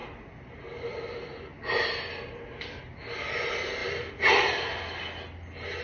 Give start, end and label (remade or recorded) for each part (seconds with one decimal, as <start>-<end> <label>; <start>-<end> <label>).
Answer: 0.0-5.8 recorded